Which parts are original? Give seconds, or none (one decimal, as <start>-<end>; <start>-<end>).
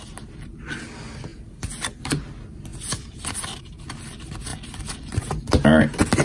0.0-6.2